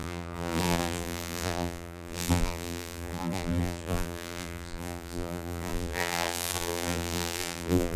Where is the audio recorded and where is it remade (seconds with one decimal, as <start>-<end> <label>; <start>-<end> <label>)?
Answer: 0.0-8.0 remade